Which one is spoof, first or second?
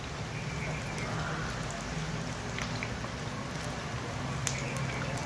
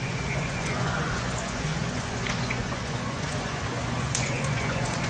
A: second